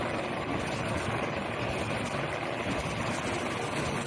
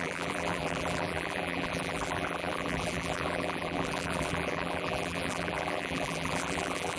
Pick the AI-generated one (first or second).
second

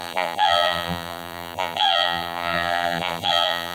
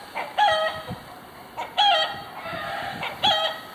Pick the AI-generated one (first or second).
first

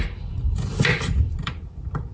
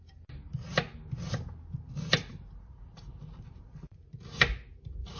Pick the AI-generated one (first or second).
first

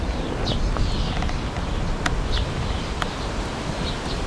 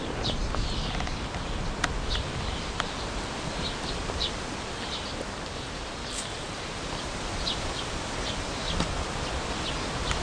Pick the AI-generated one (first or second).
second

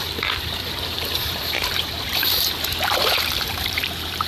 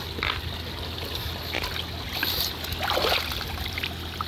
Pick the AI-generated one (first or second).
first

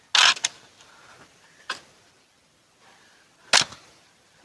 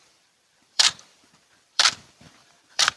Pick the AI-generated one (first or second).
second